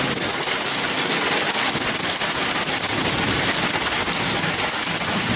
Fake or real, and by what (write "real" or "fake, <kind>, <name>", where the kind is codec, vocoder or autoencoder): real